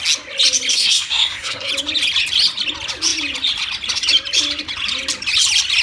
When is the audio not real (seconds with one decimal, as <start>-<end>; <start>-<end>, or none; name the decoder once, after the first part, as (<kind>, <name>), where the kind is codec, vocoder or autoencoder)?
0.7-1.7 (codec, SNAC)